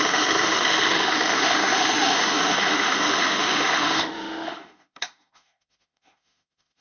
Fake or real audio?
fake